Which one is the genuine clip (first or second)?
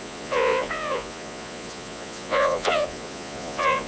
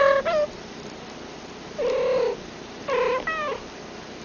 second